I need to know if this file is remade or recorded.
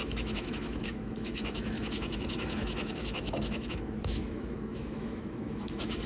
remade